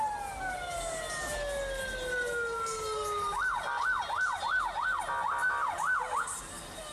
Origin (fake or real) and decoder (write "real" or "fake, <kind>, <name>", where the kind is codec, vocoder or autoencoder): real